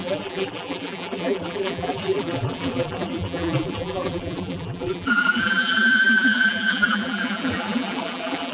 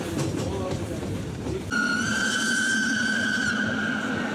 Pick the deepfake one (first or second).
first